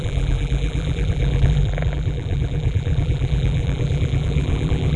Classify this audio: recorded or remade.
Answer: remade